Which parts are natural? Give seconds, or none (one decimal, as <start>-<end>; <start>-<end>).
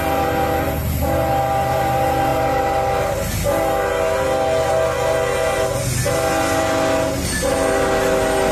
0.0-8.5